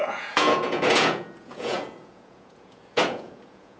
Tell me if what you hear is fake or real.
fake